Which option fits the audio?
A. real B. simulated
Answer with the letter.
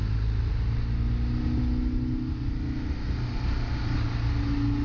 A